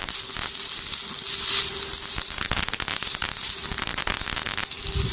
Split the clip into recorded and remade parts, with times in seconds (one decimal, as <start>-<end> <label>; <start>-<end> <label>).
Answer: 0.0-5.1 recorded